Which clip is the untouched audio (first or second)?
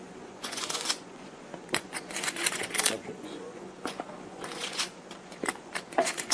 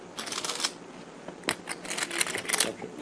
second